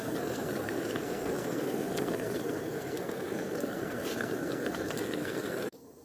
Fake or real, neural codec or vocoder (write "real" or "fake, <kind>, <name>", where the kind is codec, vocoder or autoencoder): fake, codec, SNAC